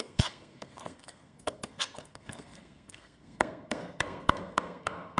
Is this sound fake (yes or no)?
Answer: yes